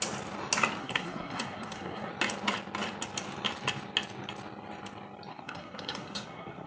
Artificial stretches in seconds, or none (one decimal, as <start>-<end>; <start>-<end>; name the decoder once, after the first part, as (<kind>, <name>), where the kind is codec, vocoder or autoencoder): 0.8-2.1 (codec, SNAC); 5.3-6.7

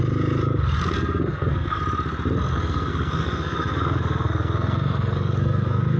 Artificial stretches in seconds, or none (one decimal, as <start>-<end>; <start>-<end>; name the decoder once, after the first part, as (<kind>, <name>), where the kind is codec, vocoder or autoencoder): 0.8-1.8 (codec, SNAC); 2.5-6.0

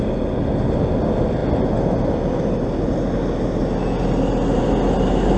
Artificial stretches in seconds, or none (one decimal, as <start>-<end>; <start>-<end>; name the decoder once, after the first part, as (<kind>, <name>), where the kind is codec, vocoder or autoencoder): none

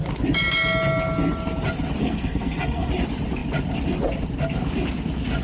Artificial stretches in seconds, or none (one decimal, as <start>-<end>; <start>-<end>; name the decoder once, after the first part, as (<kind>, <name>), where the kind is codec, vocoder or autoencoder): 2.0-2.9 (codec, SNAC)

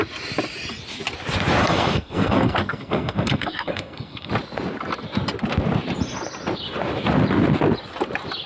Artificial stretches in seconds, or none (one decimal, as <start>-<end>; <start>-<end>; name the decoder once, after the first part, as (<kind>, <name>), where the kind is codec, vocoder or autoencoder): 1.6-4.3 (codec, SNAC)